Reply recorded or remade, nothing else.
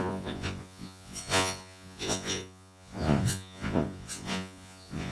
remade